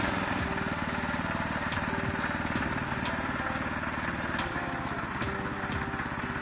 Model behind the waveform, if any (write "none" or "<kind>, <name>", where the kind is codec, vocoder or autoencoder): none